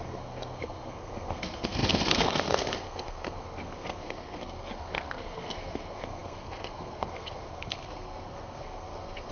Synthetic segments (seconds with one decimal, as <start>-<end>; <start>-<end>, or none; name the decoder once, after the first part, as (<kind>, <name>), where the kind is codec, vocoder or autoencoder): 0.0-9.3 (codec, SNAC)